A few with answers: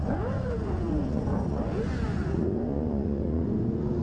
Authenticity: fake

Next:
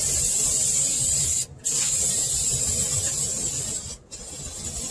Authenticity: real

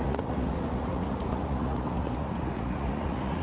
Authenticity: fake